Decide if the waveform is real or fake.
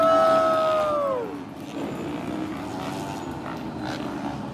real